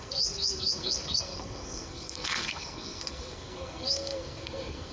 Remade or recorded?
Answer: remade